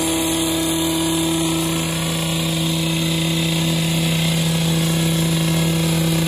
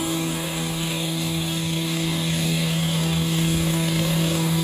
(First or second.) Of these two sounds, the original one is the first